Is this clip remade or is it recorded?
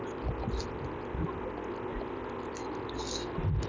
recorded